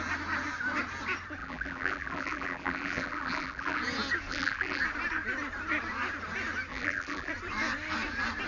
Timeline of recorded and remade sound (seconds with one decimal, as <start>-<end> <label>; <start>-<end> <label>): 0.0-1.4 recorded; 1.4-3.8 remade; 3.8-4.3 recorded; 4.3-4.8 remade; 4.8-6.7 recorded; 6.7-7.3 remade; 7.3-8.5 recorded